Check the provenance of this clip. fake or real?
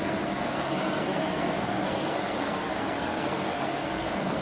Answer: fake